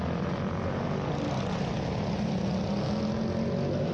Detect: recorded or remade recorded